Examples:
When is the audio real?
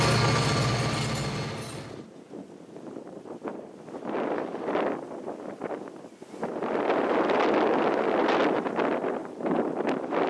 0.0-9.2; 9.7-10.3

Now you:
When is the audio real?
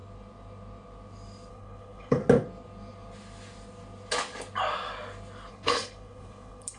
0.0-1.5; 2.2-5.5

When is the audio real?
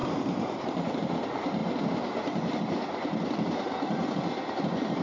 0.0-5.0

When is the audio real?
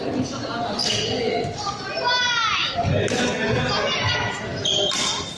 0.0-5.4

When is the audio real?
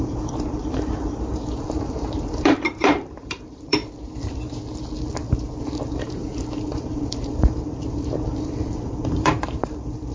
3.8-5.6